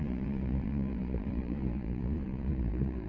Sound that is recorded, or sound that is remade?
remade